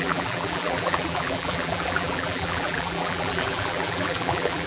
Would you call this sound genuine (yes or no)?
no